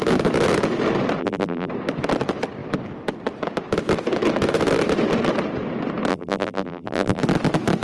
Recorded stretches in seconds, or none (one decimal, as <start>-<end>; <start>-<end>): 0.0-1.2; 1.7-6.1; 7.2-7.8